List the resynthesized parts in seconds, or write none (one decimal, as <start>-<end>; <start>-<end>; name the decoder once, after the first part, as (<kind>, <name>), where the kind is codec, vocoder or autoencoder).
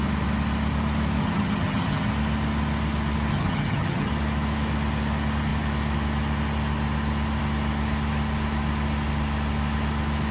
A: 1.2-2.1 (vocoder, HiFi-GAN); 3.3-4.1